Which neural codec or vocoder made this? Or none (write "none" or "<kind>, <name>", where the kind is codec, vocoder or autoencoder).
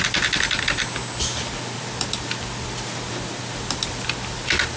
none